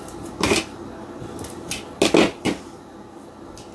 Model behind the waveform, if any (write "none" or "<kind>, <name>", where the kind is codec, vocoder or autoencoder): none